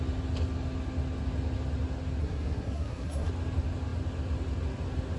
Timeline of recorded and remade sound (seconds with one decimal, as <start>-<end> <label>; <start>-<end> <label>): 0.0-2.2 recorded; 2.2-3.3 remade; 3.3-5.2 recorded